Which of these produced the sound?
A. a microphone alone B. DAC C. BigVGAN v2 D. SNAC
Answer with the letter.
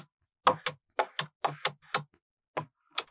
A